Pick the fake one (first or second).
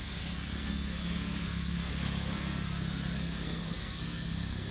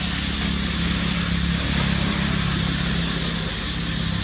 first